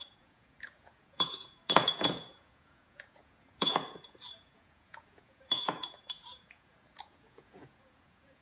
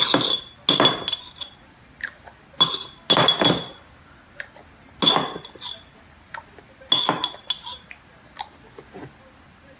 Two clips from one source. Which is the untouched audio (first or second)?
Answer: second